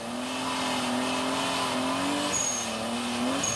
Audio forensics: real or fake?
real